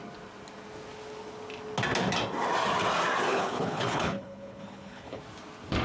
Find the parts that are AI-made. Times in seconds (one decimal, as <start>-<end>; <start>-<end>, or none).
3.3-5.2